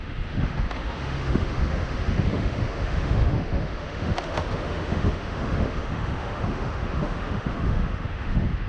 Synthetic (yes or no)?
yes